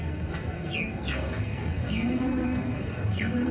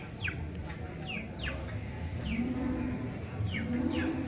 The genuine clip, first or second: second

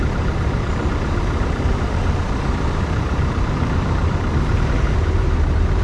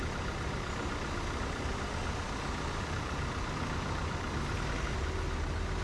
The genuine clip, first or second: second